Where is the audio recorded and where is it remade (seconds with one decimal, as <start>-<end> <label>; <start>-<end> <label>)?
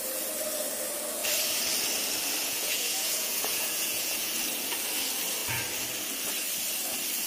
0.0-2.4 recorded; 2.4-4.3 remade; 4.3-7.3 recorded